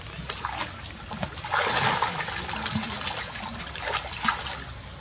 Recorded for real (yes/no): yes